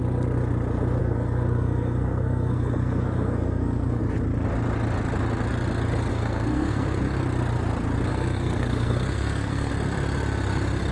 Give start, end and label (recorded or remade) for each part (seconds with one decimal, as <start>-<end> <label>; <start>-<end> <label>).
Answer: 0.0-1.0 recorded; 1.0-4.0 remade; 4.0-6.1 recorded; 6.1-7.0 remade; 7.0-8.1 recorded; 8.1-9.7 remade; 9.7-10.9 recorded

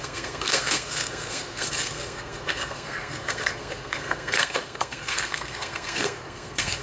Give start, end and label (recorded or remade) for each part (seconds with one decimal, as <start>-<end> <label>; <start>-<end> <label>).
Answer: 0.0-6.8 remade

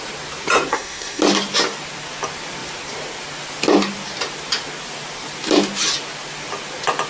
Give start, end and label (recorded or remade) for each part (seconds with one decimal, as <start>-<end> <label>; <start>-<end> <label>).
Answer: 0.0-0.7 recorded; 0.7-1.2 remade; 1.2-7.1 recorded